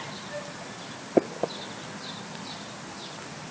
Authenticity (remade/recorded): recorded